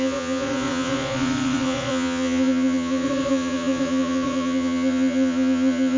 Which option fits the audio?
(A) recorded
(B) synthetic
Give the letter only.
B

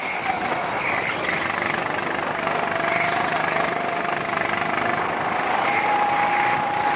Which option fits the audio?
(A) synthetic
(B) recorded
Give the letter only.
B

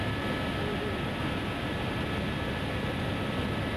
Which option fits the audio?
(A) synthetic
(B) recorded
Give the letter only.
B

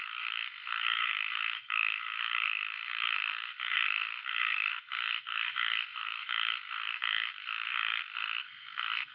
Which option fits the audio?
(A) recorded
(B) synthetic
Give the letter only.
B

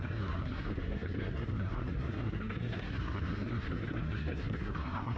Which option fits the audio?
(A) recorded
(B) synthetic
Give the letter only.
B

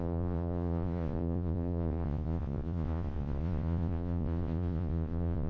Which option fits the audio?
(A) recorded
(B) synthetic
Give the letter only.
B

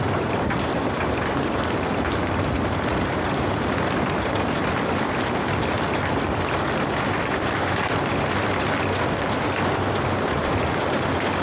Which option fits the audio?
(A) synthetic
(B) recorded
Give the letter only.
A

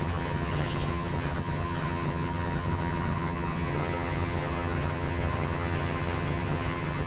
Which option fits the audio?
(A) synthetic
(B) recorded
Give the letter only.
A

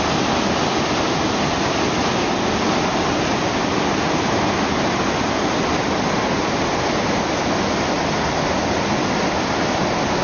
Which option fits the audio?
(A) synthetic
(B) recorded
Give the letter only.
B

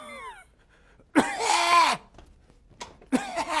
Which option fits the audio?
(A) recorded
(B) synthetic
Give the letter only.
A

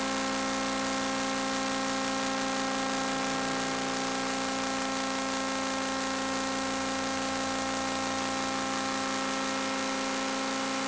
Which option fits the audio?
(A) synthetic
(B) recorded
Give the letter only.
B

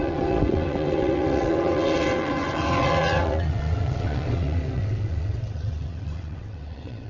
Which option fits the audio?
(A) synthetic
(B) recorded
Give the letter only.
A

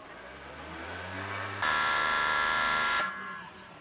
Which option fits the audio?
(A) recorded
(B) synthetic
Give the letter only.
B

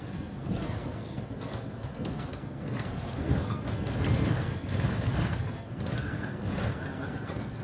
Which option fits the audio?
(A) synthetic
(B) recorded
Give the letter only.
A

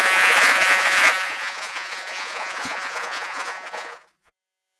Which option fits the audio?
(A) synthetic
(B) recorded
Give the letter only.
A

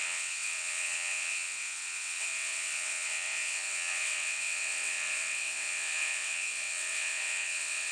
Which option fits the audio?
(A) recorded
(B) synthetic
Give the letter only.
B